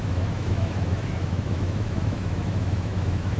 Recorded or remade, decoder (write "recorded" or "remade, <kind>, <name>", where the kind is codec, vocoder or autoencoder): remade, autoencoder, DAC-VAE